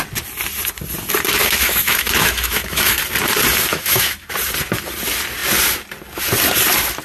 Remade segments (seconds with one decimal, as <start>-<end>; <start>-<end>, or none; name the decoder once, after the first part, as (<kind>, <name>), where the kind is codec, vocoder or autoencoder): 1.4-3.0 (autoencoder, DAC-VAE); 3.7-4.3